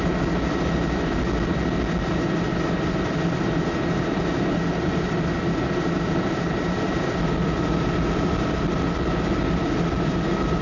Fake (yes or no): no